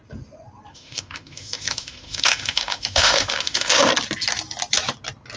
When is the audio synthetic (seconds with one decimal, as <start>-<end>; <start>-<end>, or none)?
0.7-3.9